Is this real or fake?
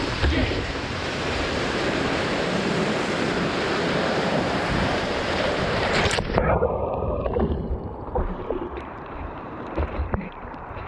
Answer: fake